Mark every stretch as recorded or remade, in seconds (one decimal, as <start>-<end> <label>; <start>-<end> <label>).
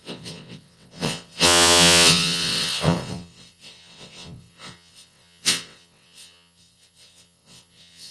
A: 0.0-8.1 remade